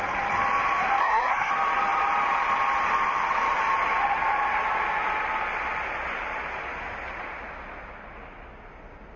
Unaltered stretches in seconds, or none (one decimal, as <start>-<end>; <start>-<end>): 0.0-1.0; 1.5-9.2